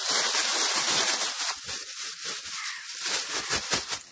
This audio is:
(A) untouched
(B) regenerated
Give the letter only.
A